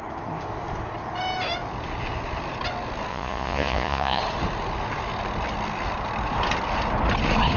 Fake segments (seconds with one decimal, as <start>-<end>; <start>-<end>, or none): 3.1-4.2